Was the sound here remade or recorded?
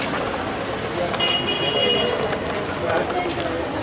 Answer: recorded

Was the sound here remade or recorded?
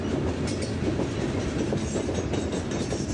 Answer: recorded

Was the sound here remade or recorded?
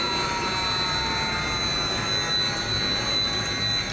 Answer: recorded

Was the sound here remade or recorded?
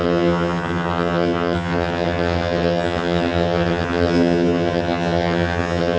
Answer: remade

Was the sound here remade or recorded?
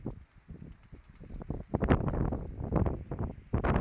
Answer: recorded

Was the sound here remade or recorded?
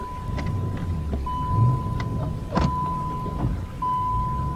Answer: recorded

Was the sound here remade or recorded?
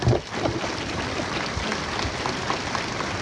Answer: remade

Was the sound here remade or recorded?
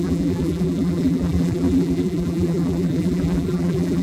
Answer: remade